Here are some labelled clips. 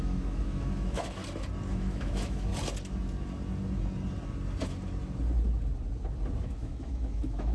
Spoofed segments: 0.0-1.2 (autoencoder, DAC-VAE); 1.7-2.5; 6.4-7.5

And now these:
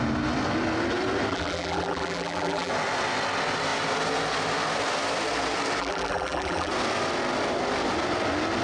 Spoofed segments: 1.3-2.7 (vocoder, BigVGAN v2); 5.8-6.7

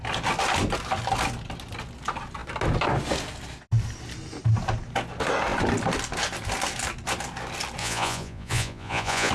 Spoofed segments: 7.8-9.3 (vocoder, Vocos)